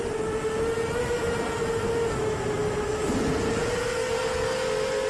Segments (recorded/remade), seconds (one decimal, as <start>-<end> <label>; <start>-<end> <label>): 0.0-5.1 recorded